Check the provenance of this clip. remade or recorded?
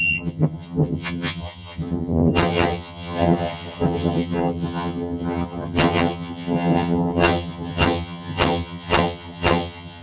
remade